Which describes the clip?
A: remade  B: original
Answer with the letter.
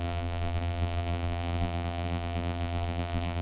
A